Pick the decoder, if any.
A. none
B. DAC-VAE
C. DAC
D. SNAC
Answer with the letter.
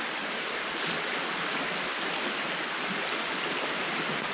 A